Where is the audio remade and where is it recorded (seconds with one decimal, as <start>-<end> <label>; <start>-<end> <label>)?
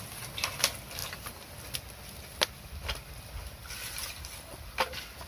0.0-5.3 recorded